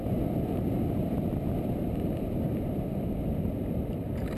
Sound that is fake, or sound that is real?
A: fake